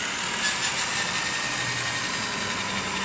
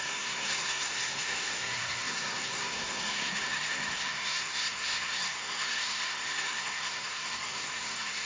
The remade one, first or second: second